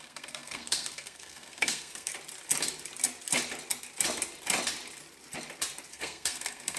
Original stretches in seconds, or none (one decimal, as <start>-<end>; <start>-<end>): 2.1-5.9